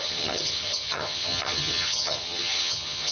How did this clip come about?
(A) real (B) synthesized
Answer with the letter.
B